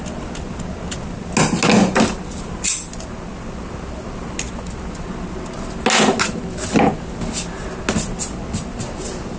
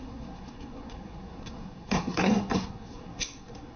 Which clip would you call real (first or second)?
first